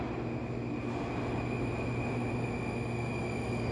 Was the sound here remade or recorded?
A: recorded